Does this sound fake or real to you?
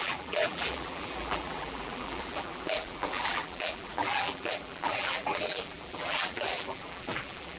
fake